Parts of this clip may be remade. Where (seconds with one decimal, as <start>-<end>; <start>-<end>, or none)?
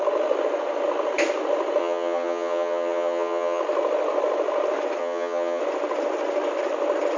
1.8-3.6; 5.0-5.6